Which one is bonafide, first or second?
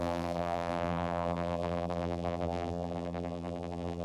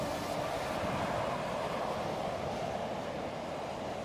second